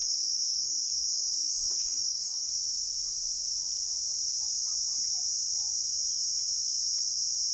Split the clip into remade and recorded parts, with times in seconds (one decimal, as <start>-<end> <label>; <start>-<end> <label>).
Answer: 0.0-2.5 remade; 2.5-7.5 recorded